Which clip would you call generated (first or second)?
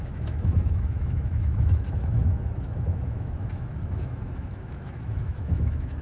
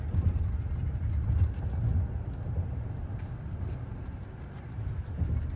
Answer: first